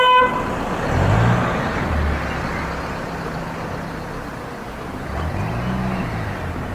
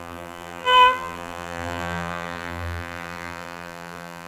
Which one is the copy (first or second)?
second